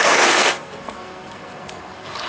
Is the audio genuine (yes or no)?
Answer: no